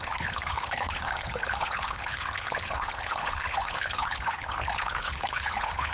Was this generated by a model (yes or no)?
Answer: yes